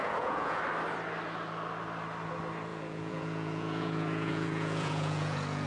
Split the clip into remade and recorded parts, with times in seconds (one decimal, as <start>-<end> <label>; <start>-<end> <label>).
0.0-0.6 remade; 0.6-2.7 recorded; 2.7-5.7 remade